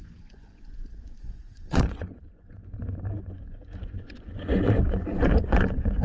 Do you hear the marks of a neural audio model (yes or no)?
yes